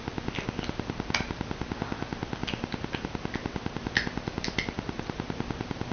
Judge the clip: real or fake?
real